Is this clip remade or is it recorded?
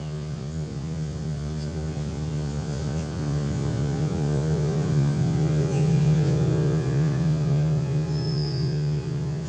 remade